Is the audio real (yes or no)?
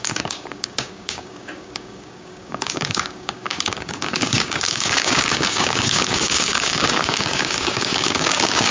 no